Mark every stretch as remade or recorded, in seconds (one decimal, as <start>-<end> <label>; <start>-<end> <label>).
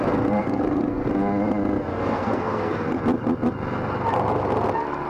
0.0-0.4 recorded; 0.4-1.1 remade; 1.1-1.9 recorded; 1.9-3.0 remade; 3.0-5.1 recorded